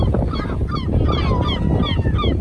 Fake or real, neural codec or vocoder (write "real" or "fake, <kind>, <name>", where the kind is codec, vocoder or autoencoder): fake, vocoder, BigVGAN v2